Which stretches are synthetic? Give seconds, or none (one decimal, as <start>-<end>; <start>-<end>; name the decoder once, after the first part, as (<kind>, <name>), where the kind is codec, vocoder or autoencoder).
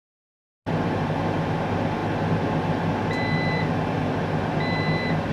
none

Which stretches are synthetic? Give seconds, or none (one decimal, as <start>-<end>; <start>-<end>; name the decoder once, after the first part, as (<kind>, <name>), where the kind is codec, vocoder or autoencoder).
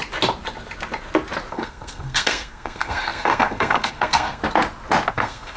1.5-4.4 (codec, SNAC); 5.1-5.6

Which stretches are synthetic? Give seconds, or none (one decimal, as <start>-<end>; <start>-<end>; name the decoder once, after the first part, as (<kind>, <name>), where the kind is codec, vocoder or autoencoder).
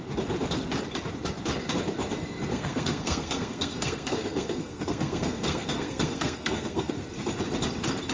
2.5-6.9 (codec, SNAC)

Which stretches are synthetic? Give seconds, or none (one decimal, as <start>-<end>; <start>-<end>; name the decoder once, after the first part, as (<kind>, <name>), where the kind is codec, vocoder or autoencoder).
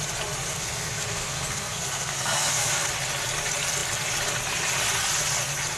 0.5-2.9 (codec, SNAC)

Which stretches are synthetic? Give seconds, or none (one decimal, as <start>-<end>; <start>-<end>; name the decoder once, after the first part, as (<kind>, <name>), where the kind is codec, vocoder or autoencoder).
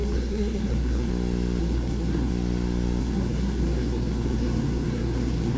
0.0-1.1 (codec, SNAC); 1.6-2.3; 3.0-5.6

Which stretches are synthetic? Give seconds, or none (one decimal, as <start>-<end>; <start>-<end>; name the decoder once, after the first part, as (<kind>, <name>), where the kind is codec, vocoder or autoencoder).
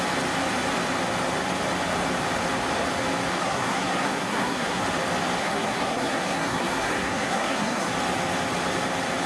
3.4-4.8 (codec, SNAC); 5.4-7.9